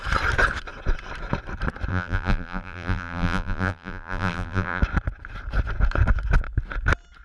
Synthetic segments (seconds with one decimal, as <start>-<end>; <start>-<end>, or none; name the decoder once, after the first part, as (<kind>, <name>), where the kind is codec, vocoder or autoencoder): 1.9-4.8 (vocoder, BigVGAN v2)

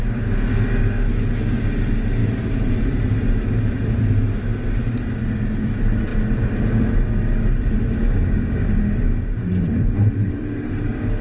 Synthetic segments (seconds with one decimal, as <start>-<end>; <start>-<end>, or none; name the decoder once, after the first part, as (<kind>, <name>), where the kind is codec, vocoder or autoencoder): 2.2-4.8 (vocoder, BigVGAN v2); 9.4-11.2